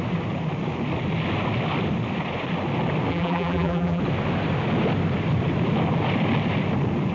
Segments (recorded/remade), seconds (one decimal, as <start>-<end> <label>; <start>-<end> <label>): 0.0-3.1 recorded; 3.1-4.0 remade; 4.0-7.1 recorded